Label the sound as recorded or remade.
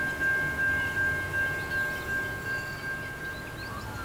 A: recorded